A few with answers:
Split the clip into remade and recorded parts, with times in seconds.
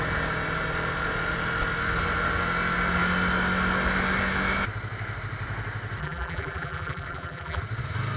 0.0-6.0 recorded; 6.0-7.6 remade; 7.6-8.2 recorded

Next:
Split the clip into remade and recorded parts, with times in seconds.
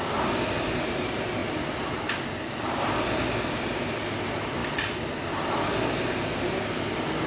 0.0-7.3 recorded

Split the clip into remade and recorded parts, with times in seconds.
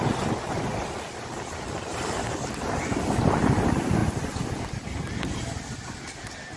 0.0-6.6 recorded